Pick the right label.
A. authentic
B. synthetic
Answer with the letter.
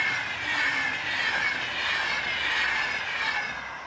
A